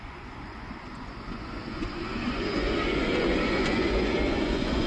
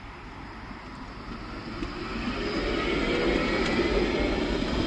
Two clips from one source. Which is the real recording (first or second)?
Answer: second